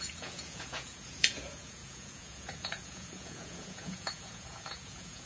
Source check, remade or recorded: remade